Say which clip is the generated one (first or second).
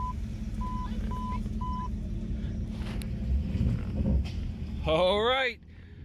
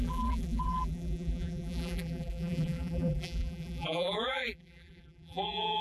second